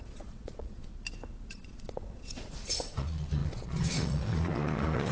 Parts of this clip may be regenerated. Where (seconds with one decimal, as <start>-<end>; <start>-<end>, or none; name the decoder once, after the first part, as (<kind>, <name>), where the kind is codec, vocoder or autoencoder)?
0.0-0.9 (vocoder, Vocos); 1.5-5.1